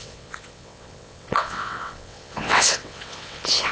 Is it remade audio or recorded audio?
remade